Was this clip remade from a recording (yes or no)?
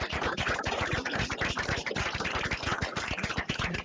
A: yes